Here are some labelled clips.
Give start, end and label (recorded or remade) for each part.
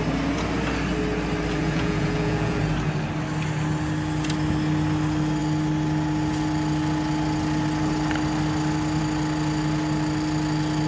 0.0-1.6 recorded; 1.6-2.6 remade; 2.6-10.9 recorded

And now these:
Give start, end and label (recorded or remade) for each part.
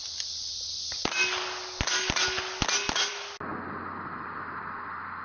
0.0-5.2 recorded